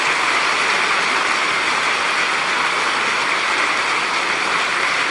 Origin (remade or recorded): recorded